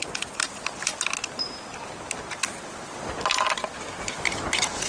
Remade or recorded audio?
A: recorded